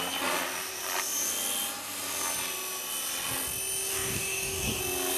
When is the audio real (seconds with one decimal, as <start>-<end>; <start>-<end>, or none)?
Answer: 0.0-3.9; 4.8-5.2